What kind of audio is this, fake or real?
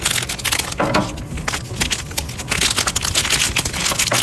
real